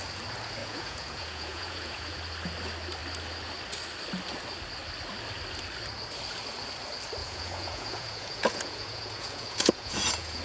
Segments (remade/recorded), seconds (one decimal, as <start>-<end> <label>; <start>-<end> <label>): 0.0-0.6 recorded; 0.6-2.2 remade; 2.2-7.2 recorded; 7.2-10.4 remade